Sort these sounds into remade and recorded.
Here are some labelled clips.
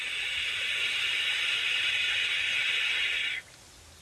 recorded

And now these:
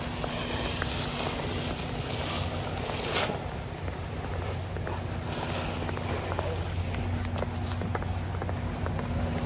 recorded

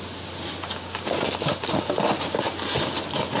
recorded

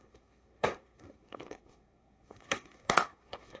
remade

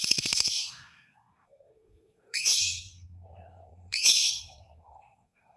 remade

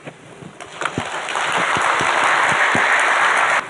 recorded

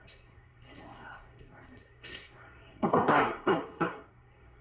remade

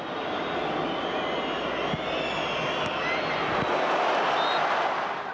recorded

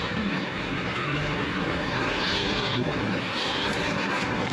remade